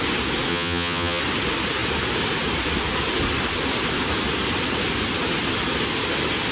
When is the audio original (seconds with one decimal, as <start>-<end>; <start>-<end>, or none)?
0.0-0.5; 1.2-6.5